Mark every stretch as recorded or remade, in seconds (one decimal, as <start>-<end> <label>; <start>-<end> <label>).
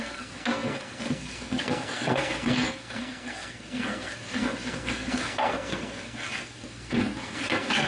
0.0-7.9 remade